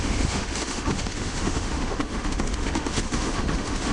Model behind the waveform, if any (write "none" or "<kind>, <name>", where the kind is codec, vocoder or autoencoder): autoencoder, DAC-VAE